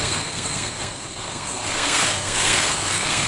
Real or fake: fake